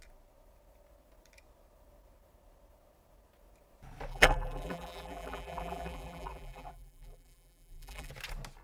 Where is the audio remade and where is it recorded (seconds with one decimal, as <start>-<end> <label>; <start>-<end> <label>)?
0.0-4.1 recorded; 4.1-8.1 remade; 8.1-8.6 recorded